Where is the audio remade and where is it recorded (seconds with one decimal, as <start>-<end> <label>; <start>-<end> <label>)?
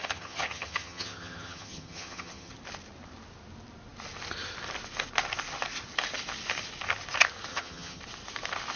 0.0-2.5 remade; 2.5-7.5 recorded; 7.5-8.0 remade; 8.0-8.8 recorded